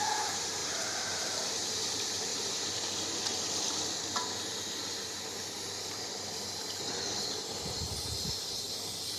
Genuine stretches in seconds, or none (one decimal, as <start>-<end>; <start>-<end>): 2.3-6.8

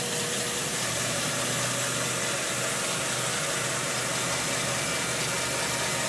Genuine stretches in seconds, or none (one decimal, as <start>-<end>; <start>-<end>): 0.0-0.6; 1.4-3.3; 3.9-6.1

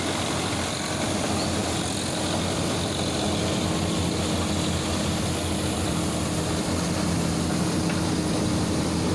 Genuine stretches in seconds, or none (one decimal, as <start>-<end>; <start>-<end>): 0.0-9.1

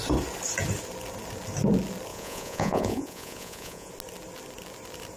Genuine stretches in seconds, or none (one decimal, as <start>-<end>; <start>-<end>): 0.0-2.1; 3.9-5.2

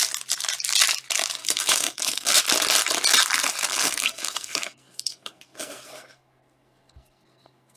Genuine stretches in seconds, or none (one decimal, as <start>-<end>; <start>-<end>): 0.0-1.4; 2.4-3.7